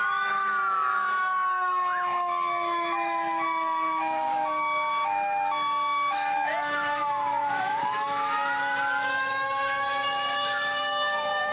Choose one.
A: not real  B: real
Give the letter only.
A